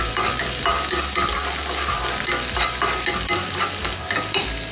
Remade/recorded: recorded